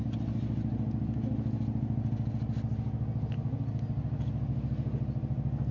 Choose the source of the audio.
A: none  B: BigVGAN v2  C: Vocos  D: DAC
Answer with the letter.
A